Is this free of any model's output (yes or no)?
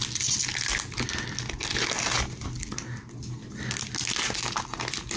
yes